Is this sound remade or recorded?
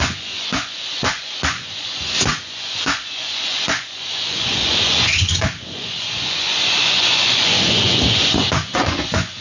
remade